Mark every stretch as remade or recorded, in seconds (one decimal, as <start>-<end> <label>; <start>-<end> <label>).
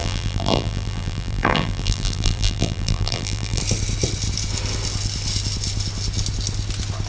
0.0-3.6 remade; 3.6-7.1 recorded